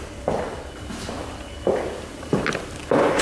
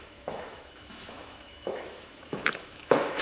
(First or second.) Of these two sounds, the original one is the first